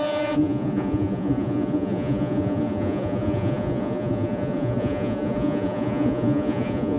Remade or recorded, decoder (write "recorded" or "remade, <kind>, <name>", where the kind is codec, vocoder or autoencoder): remade, vocoder, Vocos